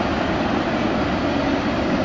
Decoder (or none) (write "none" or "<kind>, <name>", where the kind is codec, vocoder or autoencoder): none